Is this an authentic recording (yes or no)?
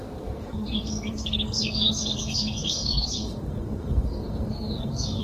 no